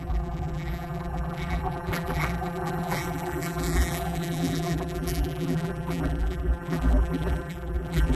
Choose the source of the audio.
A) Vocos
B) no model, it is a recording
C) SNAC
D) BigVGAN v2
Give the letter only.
D